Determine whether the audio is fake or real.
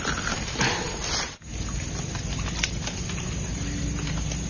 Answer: real